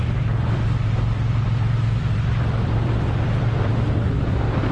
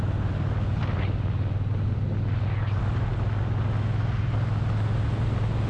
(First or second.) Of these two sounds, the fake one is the first